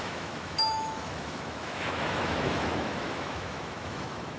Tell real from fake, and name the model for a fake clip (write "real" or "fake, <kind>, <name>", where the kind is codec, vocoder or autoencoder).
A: fake, autoencoder, DAC-VAE